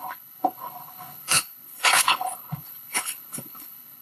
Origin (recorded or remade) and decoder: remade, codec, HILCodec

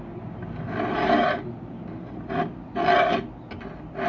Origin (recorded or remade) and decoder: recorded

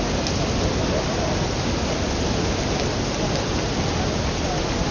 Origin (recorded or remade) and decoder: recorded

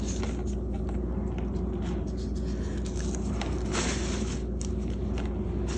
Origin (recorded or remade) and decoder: recorded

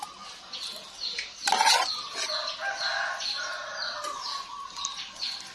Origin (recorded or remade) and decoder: recorded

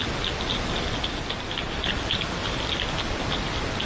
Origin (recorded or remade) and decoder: recorded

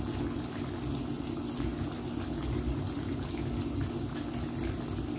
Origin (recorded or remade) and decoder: recorded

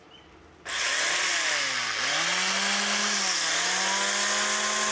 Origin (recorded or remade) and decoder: recorded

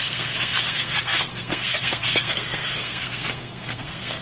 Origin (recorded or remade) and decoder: remade, codec, SNAC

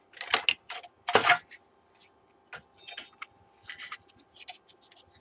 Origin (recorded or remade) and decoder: recorded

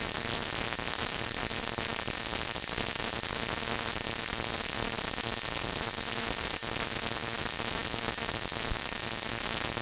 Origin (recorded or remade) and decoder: recorded